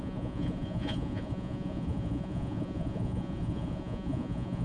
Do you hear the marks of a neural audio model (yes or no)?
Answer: yes